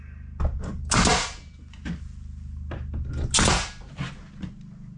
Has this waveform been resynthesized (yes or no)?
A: no